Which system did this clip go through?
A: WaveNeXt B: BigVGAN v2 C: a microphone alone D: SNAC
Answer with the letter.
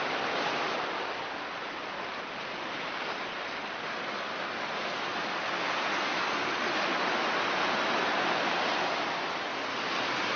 C